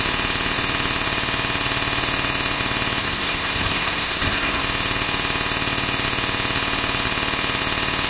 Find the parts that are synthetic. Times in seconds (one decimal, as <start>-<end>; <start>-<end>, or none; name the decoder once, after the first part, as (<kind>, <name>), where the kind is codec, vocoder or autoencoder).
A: 3.0-4.6 (codec, SNAC)

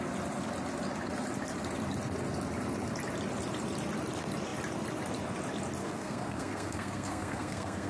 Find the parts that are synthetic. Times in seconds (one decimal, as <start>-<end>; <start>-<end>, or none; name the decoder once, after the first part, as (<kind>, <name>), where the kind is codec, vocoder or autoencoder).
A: 5.8-7.9 (codec, SNAC)

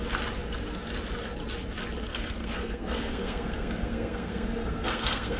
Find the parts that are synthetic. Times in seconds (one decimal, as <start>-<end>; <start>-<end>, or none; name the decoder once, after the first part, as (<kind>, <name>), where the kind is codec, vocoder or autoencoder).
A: 2.1-5.4 (codec, SNAC)

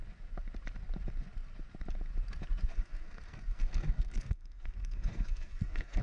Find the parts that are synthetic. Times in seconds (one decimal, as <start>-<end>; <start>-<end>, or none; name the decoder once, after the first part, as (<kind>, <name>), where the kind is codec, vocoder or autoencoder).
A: 2.7-6.0 (codec, SNAC)

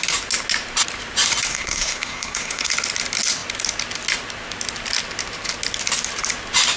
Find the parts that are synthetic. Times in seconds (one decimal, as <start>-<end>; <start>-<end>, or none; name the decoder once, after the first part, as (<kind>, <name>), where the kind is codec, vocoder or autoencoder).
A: 1.5-2.7 (codec, SNAC)

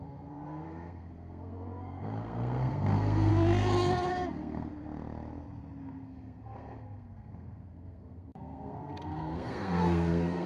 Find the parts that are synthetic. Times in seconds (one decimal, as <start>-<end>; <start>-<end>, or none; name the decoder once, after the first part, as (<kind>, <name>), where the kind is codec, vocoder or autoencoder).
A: 0.0-3.3 (codec, SNAC); 4.1-4.7; 5.8-10.5

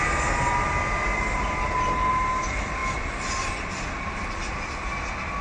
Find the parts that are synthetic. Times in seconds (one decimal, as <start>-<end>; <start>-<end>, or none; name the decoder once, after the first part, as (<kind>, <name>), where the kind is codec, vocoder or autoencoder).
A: none